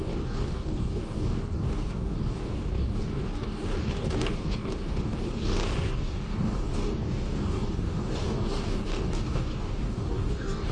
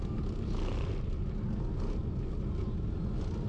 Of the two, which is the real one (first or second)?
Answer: second